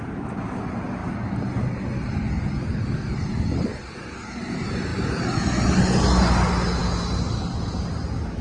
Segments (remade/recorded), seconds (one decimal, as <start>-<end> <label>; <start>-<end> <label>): 0.0-8.4 recorded